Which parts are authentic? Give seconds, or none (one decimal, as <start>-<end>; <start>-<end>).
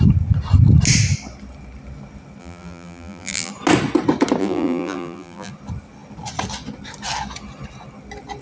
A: 0.0-2.4; 3.5-4.4; 5.5-8.4